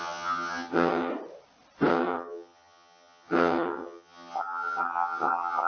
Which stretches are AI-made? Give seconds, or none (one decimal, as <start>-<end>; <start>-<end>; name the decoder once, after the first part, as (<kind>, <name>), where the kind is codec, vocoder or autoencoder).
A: 0.0-1.1 (vocoder, HiFi-GAN); 1.9-5.7